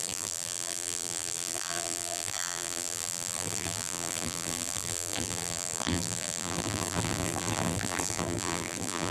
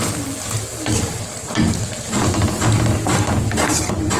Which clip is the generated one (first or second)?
first